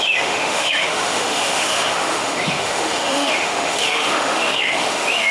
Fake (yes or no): yes